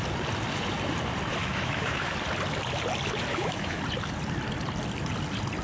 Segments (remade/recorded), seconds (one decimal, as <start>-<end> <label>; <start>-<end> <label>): 0.0-1.3 recorded; 1.3-2.1 remade; 2.1-3.3 recorded; 3.3-3.8 remade; 3.8-5.6 recorded